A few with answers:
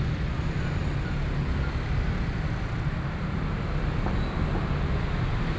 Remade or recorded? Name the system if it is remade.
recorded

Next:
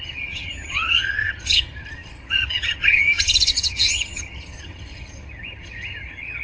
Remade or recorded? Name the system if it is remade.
remade, vocoder, HiFi-GAN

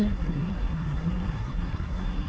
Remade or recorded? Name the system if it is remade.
remade, codec, SNAC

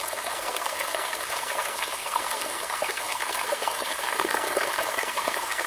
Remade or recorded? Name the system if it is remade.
remade, codec, SNAC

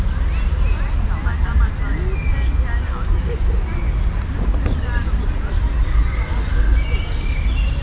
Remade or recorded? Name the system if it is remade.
recorded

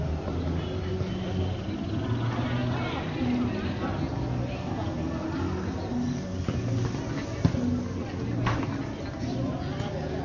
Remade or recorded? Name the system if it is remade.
recorded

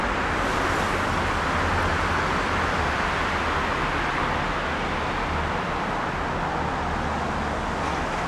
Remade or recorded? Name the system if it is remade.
recorded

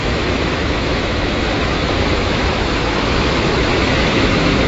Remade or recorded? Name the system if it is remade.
remade, autoencoder, DAC-VAE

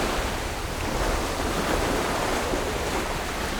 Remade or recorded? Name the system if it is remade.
recorded